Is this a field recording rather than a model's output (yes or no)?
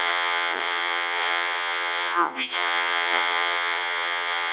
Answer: no